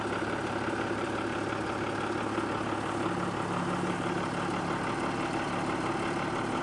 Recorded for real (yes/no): yes